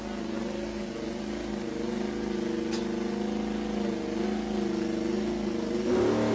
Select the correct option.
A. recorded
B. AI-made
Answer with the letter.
A